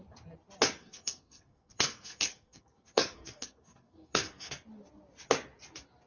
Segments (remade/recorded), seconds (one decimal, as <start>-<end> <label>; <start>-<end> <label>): 0.0-0.8 recorded; 0.8-4.5 remade; 4.5-6.1 recorded